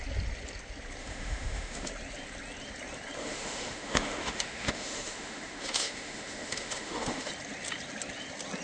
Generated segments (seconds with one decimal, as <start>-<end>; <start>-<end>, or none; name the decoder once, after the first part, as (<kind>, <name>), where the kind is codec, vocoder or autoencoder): 1.0-1.9 (autoencoder, DAC-VAE); 3.2-7.3

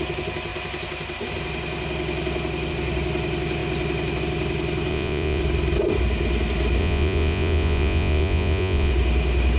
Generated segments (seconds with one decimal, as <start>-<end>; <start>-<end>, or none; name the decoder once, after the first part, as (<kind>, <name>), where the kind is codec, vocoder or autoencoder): 4.9-5.4 (vocoder, Vocos); 6.8-8.9

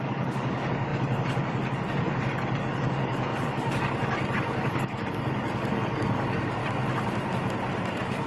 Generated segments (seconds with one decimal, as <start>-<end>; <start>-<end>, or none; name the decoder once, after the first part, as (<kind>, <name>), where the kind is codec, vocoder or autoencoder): 0.0-6.6 (codec, DAC); 7.9-8.3